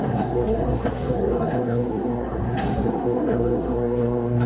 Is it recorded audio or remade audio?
remade